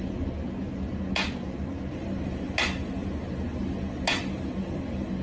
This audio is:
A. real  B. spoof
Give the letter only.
A